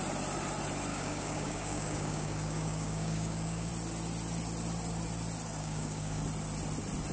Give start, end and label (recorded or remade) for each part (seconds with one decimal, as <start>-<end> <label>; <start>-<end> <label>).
0.0-0.9 recorded; 0.9-3.7 remade; 3.7-5.6 recorded; 5.6-6.2 remade; 6.2-7.1 recorded